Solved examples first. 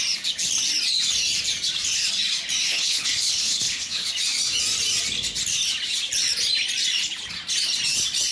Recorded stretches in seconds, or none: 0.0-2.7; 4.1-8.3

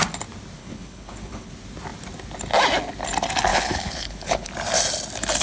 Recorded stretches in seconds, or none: 0.0-0.6; 1.5-3.5; 4.5-5.4

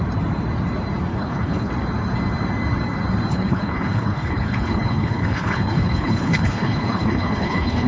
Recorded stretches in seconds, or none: 0.0-1.1; 1.7-3.3

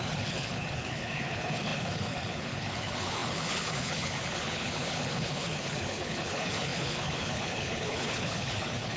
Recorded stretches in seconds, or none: none